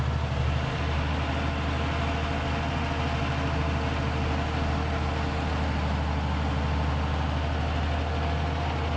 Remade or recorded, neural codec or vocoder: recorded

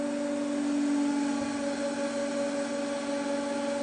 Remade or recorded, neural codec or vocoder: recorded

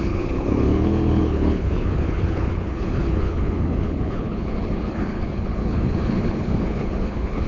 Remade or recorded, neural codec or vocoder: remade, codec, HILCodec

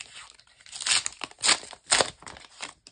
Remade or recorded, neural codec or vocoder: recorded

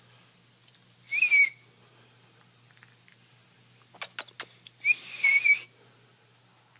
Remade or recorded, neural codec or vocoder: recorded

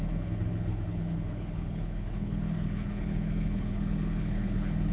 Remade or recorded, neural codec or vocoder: remade, codec, HILCodec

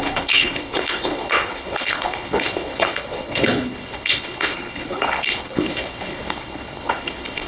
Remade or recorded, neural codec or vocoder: remade, codec, HILCodec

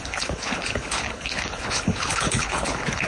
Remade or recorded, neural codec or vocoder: remade, codec, HILCodec